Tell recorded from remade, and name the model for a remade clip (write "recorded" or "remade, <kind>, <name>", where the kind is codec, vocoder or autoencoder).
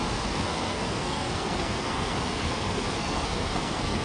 remade, codec, SNAC